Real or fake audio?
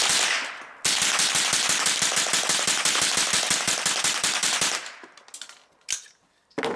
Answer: real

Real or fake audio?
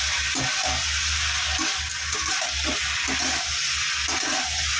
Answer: real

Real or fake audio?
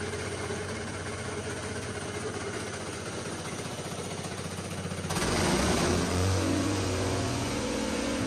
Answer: fake